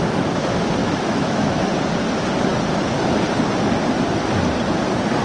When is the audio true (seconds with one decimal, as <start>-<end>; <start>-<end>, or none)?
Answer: 0.0-0.8; 1.7-5.2